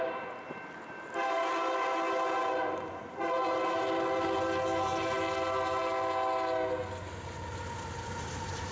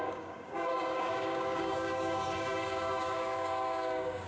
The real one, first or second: first